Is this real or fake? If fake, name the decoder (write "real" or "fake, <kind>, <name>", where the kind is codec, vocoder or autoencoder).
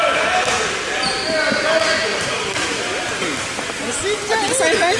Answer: real